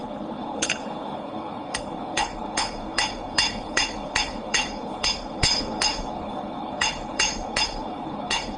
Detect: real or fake fake